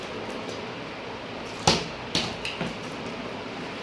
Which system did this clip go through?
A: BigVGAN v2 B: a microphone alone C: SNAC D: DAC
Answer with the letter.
B